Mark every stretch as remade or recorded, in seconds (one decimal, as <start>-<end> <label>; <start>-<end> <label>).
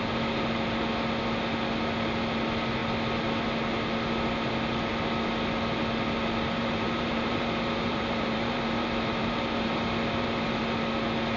0.0-6.6 recorded; 6.6-10.6 remade; 10.6-11.4 recorded